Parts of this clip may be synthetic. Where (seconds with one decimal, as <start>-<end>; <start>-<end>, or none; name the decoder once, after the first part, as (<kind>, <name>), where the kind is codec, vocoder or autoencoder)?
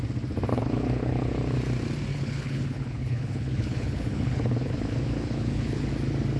0.5-1.3 (codec, HILCodec); 2.1-5.9